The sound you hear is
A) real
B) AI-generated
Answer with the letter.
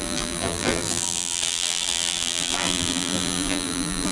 B